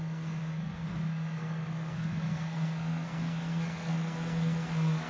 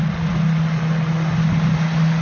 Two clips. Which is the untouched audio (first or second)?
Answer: second